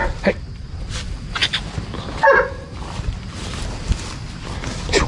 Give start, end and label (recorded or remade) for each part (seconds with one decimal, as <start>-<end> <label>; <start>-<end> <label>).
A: 0.0-5.1 recorded